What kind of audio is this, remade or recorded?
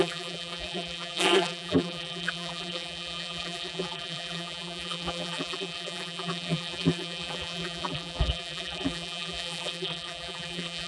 remade